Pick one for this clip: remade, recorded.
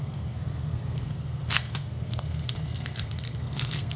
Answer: remade